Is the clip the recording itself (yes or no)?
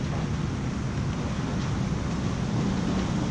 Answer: yes